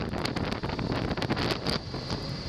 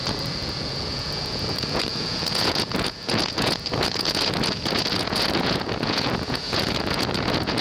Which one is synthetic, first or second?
second